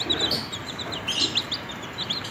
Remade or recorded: recorded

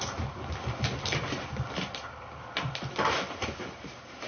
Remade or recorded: recorded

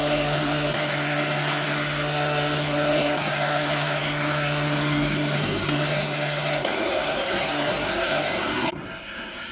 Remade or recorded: remade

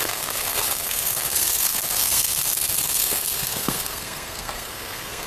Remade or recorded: remade